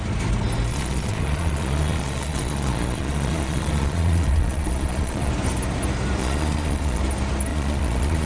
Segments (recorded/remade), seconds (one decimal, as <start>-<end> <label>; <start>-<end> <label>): 0.0-0.7 recorded; 0.7-5.3 remade; 5.3-6.2 recorded; 6.2-7.0 remade; 7.0-7.5 recorded; 7.5-8.3 remade